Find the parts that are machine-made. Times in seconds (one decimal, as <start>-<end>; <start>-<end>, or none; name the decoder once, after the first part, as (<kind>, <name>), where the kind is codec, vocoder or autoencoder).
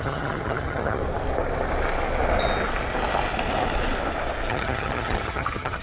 0.0-1.0 (vocoder, HiFi-GAN); 4.5-5.8